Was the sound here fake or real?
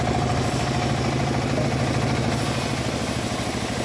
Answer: real